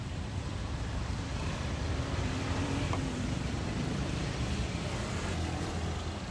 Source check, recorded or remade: remade